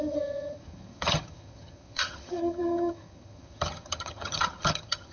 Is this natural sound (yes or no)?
no